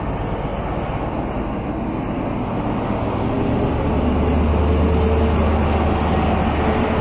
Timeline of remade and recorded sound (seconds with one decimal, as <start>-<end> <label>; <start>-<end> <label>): 0.0-7.0 recorded